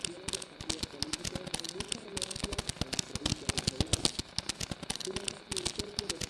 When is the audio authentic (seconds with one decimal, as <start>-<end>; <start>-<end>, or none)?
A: 0.0-6.3